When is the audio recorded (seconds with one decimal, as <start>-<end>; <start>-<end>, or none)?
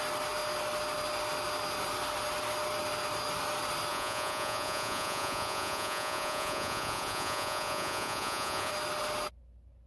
0.0-3.9; 8.7-9.9